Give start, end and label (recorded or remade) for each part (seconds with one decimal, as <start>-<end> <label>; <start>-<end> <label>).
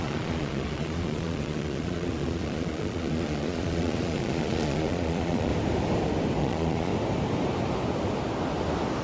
0.0-5.5 remade; 5.5-6.4 recorded; 6.4-6.9 remade; 6.9-9.0 recorded